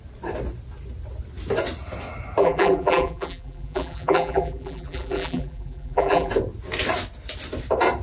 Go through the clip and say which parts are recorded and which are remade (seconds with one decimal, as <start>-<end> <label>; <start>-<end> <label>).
0.0-2.4 recorded; 2.4-6.3 remade; 6.3-8.0 recorded